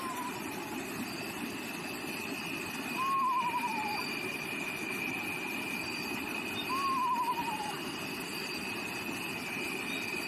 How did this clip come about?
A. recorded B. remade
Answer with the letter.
A